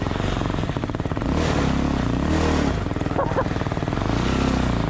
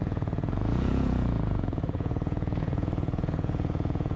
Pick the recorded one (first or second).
first